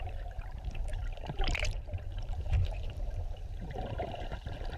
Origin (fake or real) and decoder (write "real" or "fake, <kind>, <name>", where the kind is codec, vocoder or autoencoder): fake, vocoder, BigVGAN v2